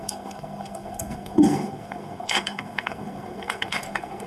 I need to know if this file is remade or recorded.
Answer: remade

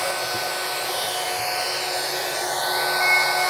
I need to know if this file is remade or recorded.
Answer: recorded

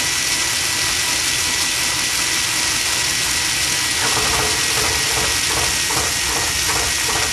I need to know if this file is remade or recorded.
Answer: recorded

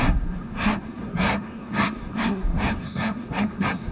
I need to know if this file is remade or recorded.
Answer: remade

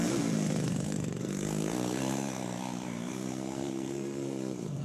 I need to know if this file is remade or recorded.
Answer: remade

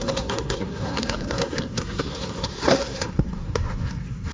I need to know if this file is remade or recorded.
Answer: remade